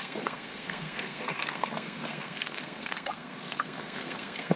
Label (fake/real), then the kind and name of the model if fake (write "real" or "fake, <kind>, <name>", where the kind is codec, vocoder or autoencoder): fake, codec, SNAC